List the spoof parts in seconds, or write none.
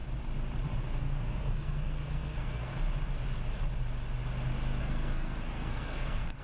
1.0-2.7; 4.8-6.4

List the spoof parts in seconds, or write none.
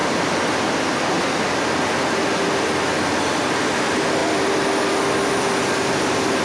none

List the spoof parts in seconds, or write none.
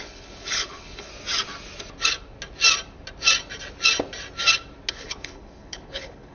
0.0-1.1; 4.9-6.3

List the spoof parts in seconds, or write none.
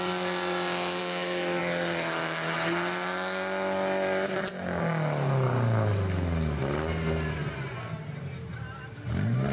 1.0-1.6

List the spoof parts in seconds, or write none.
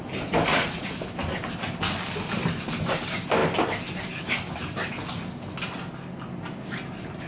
0.5-1.0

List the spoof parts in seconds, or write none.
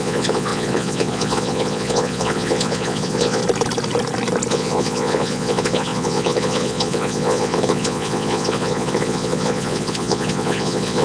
0.0-3.4; 4.5-11.0